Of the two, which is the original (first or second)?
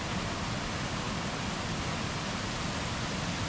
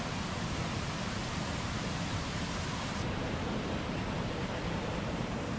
first